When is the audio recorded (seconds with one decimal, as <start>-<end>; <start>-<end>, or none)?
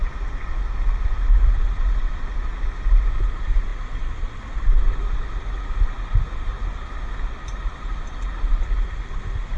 0.0-9.6